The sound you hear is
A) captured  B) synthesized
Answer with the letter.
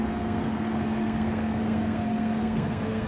B